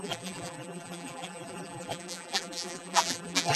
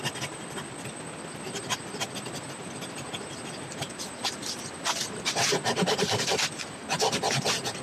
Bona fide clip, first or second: second